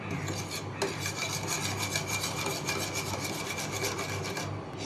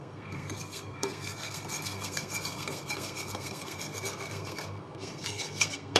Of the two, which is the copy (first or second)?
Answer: second